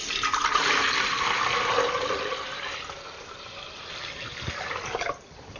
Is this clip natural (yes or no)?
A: yes